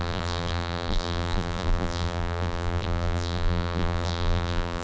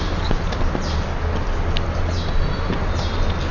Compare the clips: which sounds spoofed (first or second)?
first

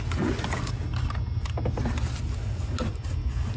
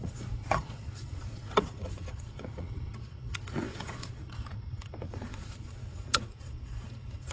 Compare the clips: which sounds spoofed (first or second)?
second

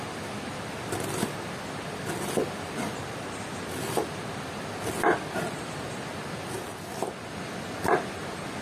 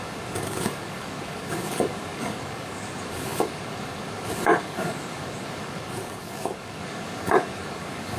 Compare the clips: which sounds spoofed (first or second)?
second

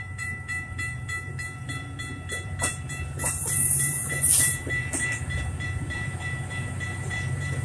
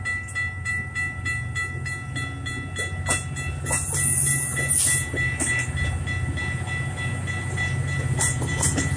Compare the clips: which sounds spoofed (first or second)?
first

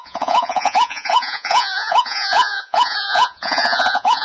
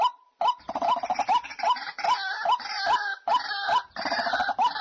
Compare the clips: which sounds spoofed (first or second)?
first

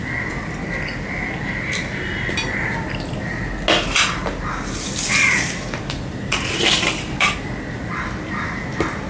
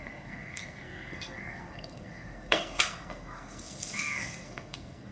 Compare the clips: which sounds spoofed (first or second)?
second